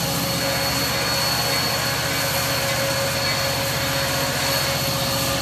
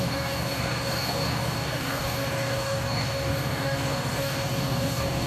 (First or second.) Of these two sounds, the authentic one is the first